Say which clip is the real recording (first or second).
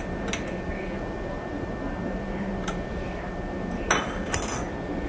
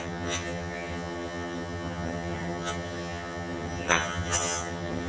first